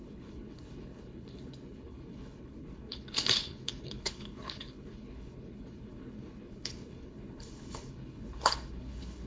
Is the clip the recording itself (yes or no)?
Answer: no